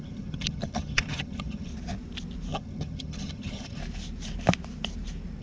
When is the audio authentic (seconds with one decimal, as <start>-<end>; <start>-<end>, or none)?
1.7-2.5; 3.8-5.4